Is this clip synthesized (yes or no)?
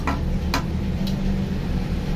no